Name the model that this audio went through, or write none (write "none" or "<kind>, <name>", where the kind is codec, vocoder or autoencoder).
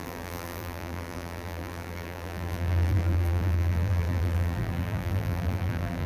vocoder, BigVGAN v2